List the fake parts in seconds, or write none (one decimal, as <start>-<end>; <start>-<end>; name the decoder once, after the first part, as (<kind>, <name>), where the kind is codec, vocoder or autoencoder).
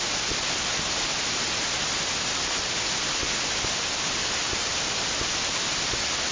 none